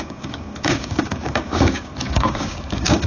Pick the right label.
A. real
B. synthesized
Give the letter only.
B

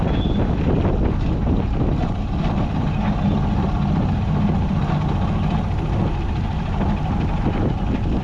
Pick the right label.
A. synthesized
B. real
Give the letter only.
B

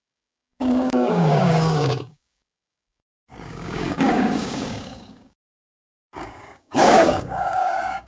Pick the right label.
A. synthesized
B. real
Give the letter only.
A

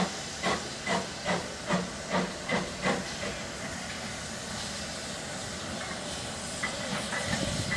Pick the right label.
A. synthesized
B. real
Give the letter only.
B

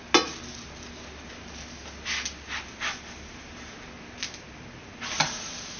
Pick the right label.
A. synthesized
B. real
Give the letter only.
B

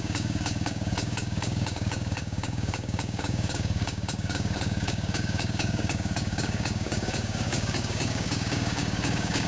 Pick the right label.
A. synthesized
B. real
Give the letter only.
A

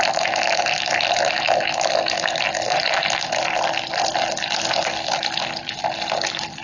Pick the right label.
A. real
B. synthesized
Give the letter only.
A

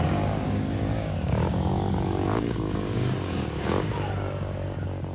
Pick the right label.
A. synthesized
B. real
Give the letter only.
A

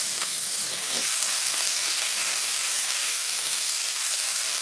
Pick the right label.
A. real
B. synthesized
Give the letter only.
B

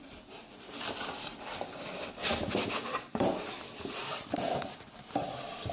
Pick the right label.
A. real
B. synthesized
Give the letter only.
A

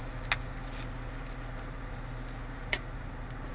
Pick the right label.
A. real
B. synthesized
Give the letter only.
A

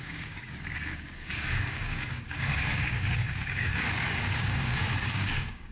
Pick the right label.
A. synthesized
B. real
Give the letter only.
A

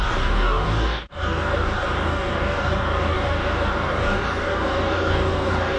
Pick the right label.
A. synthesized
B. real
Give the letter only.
A